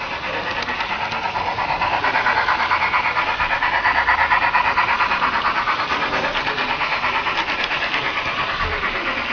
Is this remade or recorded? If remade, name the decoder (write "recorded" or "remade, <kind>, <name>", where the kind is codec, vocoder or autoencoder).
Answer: recorded